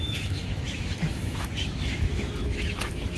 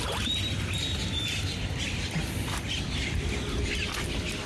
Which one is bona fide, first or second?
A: second